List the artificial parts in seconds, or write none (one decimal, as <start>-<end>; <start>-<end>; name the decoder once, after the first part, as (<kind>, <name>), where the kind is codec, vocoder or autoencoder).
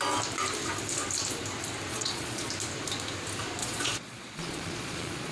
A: 1.9-2.5 (vocoder, Vocos); 3.6-5.3